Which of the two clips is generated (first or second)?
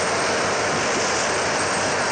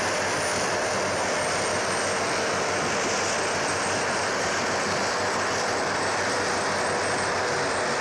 first